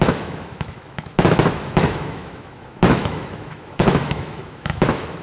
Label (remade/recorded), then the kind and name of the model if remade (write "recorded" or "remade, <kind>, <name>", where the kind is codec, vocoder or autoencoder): remade, autoencoder, DAC-VAE